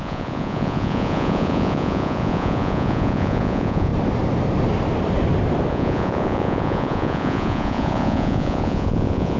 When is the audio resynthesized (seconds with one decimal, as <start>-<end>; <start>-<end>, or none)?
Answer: 0.0-3.9; 5.7-9.4